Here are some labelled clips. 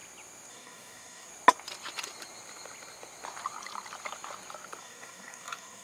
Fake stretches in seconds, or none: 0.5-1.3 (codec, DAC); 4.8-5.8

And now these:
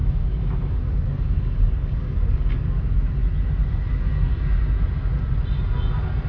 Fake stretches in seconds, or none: 0.0-2.8 (codec, DAC)

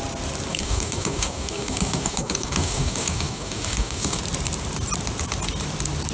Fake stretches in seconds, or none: 0.5-4.2 (codec, DAC)